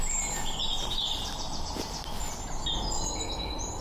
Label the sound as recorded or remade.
recorded